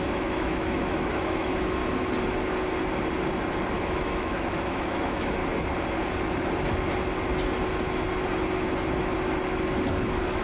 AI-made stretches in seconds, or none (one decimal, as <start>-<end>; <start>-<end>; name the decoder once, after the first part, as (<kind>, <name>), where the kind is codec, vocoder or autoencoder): 0.0-1.8 (autoencoder, DAC-VAE); 3.8-5.4; 10.0-10.4